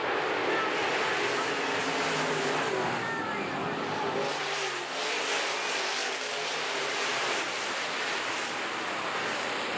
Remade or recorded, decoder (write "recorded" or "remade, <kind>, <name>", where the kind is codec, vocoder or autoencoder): recorded